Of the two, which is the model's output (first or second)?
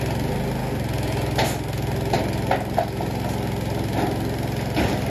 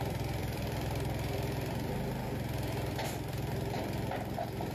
second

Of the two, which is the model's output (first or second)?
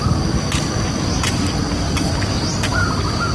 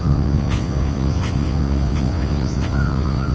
second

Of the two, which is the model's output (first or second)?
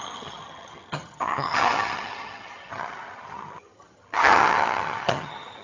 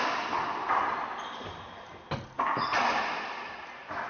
first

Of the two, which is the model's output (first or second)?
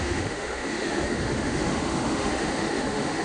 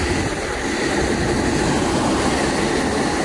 first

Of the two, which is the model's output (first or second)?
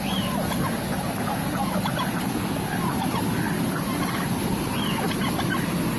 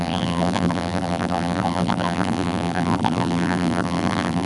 second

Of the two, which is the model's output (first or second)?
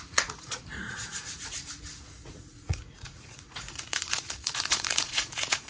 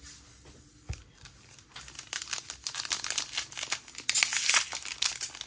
first